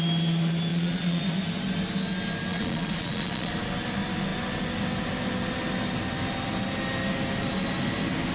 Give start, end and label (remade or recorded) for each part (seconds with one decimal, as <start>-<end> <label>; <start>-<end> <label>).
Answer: 0.0-0.7 recorded; 0.7-1.2 remade; 1.2-2.5 recorded; 2.5-3.5 remade; 3.5-8.3 recorded